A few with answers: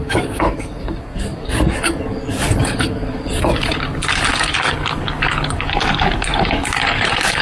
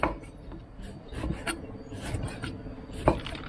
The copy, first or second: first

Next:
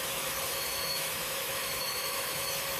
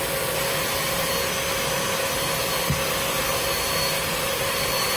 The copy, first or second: first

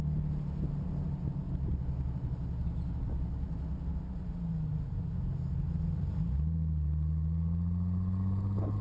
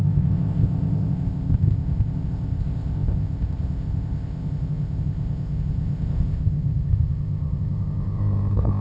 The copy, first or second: second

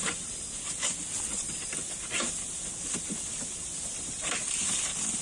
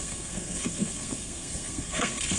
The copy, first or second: second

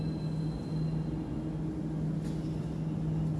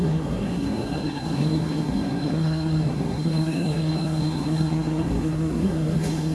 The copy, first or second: second